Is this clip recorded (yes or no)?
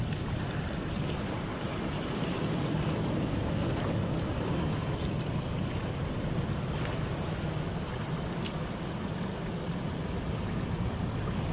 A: yes